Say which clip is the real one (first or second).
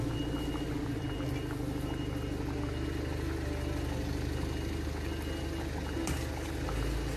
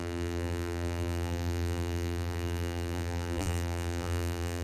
first